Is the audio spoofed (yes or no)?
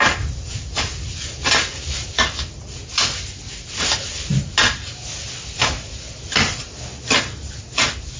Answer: no